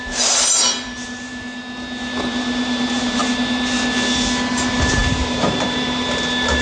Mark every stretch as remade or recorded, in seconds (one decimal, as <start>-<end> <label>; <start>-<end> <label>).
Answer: 0.0-1.3 remade; 1.3-2.3 recorded; 2.3-3.2 remade; 3.2-4.5 recorded; 4.5-6.6 remade